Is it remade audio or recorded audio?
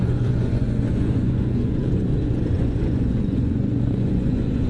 remade